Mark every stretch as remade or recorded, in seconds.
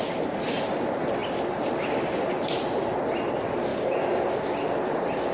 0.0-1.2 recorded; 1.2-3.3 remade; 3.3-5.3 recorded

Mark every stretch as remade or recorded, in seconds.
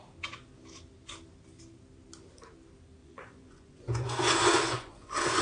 0.0-3.0 recorded; 3.0-5.4 remade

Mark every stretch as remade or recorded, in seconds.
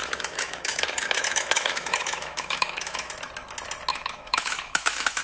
0.0-3.1 remade; 3.1-3.9 recorded; 3.9-5.2 remade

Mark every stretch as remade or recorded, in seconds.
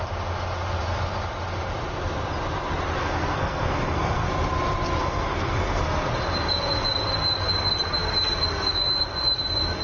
0.0-3.0 recorded; 3.0-4.3 remade; 4.3-5.0 recorded; 5.0-5.8 remade; 5.8-9.8 recorded